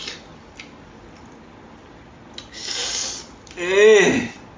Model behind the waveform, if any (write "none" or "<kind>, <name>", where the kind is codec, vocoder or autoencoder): none